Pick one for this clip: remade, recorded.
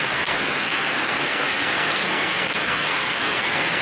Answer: remade